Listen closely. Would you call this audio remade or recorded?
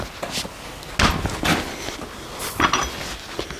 recorded